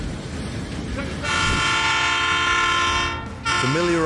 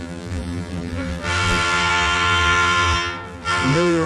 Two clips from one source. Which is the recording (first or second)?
first